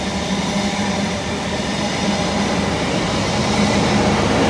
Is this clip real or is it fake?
real